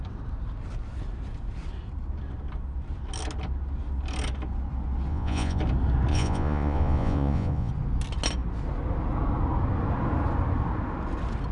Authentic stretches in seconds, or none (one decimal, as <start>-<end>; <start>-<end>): 0.0-5.1; 5.6-6.1; 7.7-11.5